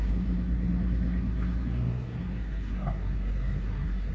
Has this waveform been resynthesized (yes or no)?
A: yes